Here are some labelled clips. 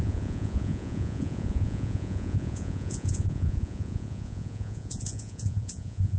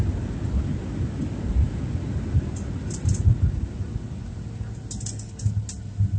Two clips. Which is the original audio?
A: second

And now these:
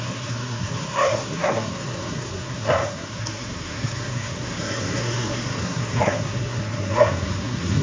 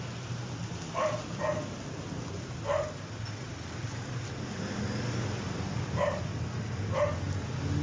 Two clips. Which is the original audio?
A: second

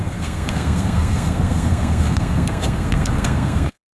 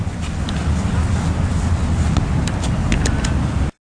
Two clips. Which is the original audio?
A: second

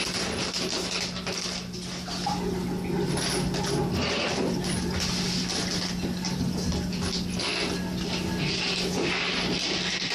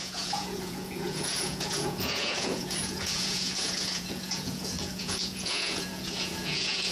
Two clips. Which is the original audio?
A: first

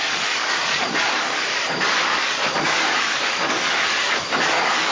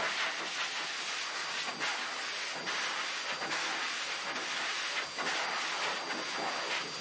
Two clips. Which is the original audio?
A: second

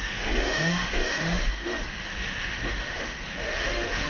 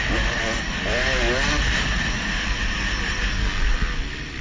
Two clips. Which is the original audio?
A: second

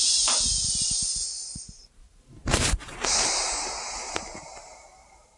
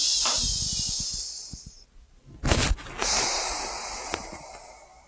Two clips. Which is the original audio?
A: second